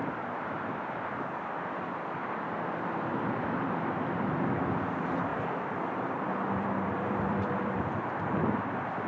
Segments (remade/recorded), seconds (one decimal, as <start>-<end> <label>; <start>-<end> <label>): 0.0-3.1 recorded; 3.1-4.3 remade; 4.3-5.3 recorded; 5.3-8.2 remade; 8.2-9.1 recorded